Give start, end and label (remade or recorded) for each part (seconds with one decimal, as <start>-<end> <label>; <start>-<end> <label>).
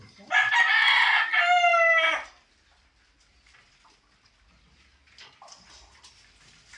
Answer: 0.0-6.8 recorded